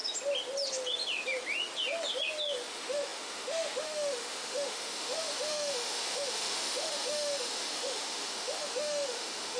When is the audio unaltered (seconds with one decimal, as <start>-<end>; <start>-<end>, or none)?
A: 0.0-2.7